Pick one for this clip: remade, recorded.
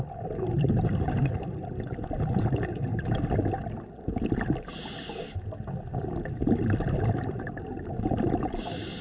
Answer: recorded